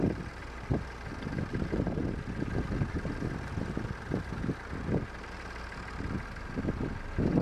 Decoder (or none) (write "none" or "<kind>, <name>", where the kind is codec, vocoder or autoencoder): none